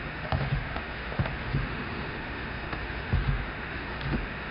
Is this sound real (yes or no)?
no